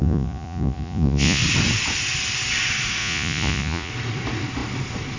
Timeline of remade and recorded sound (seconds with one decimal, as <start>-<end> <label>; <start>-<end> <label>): 0.0-1.4 remade; 1.4-3.0 recorded; 3.0-3.9 remade; 3.9-5.2 recorded